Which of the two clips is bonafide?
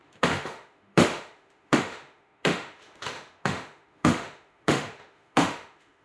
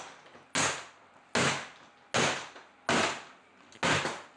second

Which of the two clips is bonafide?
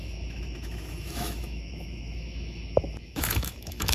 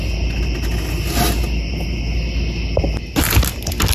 second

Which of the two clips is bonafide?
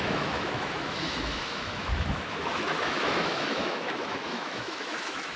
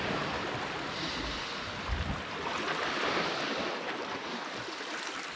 second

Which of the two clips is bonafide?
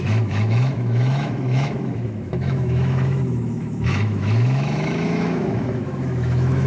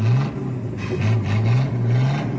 second